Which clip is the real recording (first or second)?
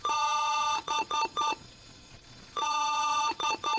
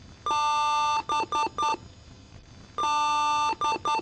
second